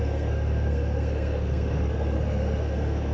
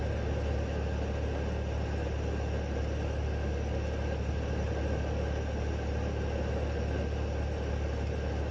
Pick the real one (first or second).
second